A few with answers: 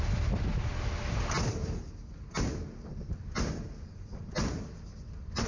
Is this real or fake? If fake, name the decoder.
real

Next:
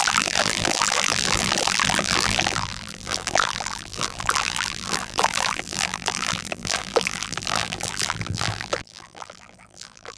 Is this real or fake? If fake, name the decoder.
fake, vocoder, BigVGAN v2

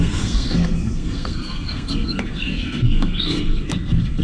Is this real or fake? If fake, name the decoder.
fake, codec, SNAC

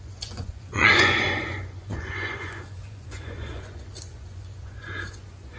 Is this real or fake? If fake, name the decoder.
fake, vocoder, Vocos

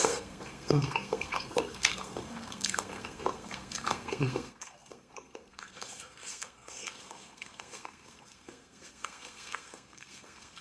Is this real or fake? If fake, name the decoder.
fake, codec, SNAC